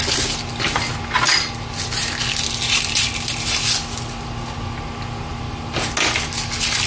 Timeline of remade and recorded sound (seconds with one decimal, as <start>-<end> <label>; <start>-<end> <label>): 0.0-6.9 recorded